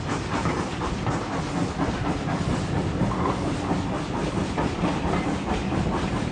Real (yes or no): yes